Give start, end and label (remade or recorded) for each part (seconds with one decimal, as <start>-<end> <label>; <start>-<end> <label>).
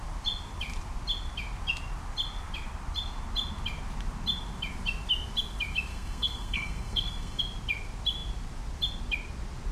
0.0-5.9 recorded; 5.9-7.4 remade; 7.4-9.7 recorded